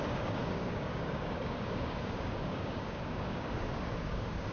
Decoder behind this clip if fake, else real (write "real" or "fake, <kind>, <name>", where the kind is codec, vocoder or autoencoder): fake, codec, DAC